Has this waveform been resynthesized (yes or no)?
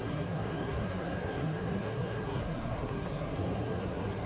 yes